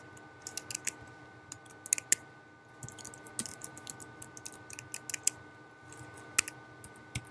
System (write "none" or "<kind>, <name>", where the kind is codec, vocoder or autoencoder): none